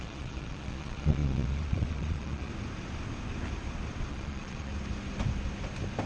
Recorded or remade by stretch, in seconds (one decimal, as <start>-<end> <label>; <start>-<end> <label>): 0.0-2.5 remade; 2.5-4.1 recorded; 4.1-4.7 remade; 4.7-6.1 recorded